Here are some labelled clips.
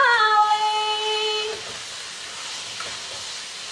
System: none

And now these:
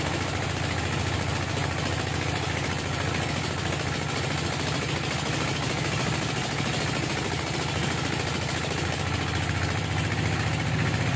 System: none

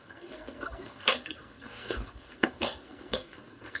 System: codec, SNAC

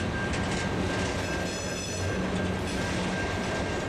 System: none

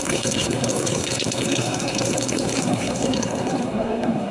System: codec, SNAC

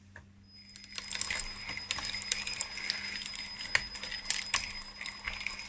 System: none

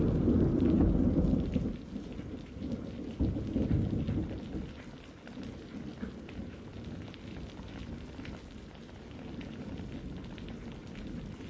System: none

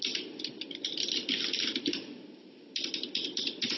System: none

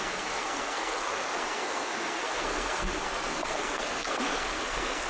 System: codec, SNAC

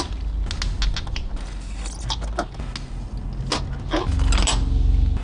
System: none